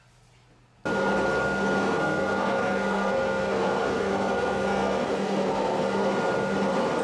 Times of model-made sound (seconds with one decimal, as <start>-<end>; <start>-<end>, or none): 1.8-6.0